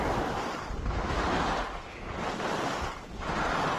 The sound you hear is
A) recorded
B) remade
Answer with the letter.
A